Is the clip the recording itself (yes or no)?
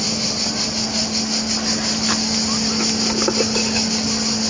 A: yes